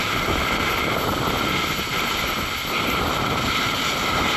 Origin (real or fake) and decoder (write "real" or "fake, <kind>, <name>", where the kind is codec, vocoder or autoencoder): fake, vocoder, BigVGAN v2